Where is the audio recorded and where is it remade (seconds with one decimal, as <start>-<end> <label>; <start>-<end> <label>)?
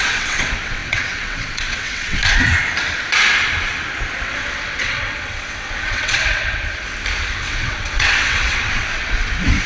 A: 0.0-2.2 remade; 2.2-4.2 recorded; 4.2-6.7 remade; 6.7-7.3 recorded; 7.3-9.7 remade